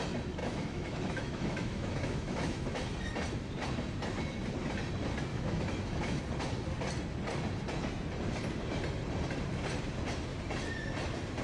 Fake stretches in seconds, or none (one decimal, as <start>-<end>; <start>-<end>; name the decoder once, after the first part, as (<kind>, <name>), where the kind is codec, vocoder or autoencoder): 0.4-2.6 (autoencoder, DAC-VAE); 5.3-6.2

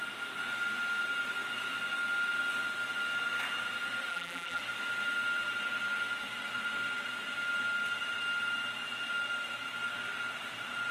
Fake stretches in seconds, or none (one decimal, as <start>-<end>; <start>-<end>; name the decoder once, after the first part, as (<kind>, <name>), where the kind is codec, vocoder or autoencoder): 4.1-4.6 (vocoder, BigVGAN v2)

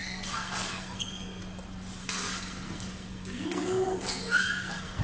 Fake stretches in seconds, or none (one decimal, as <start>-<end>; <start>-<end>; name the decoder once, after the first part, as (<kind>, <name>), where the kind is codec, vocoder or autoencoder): 0.0-1.4 (codec, SNAC); 2.0-5.0

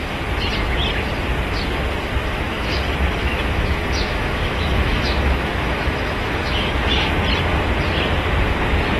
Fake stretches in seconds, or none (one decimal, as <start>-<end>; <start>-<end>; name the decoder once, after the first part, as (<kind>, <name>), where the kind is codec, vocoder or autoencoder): 2.2-2.8 (autoencoder, DAC-VAE); 3.2-7.1

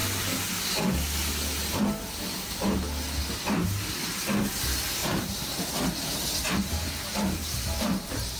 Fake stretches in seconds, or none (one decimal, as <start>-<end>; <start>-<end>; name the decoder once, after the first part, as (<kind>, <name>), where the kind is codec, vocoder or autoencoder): 5.0-8.4 (vocoder, BigVGAN v2)

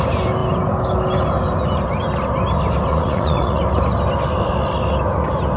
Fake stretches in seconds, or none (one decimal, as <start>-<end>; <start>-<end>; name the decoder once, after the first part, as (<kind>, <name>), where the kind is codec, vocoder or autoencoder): 2.9-3.6 (vocoder, Vocos)

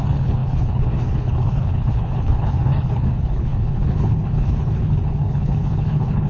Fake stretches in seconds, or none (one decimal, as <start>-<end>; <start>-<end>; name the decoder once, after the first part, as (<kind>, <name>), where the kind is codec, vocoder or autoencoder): 0.0-6.3 (codec, HILCodec)